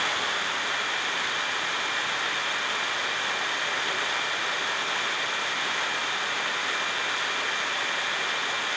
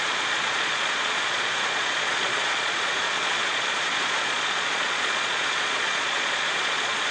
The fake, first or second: second